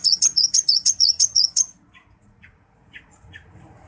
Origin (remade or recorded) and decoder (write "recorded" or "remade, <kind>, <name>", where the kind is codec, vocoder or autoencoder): remade, vocoder, Vocos